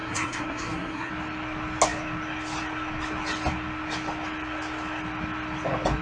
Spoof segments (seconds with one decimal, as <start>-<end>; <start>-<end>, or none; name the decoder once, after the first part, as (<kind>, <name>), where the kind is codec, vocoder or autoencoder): 0.0-1.1 (codec, SNAC)